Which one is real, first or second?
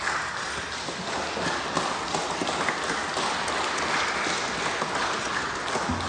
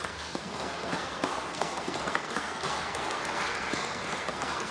first